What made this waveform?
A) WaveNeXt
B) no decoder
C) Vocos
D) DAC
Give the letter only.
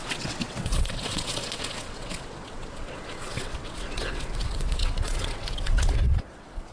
A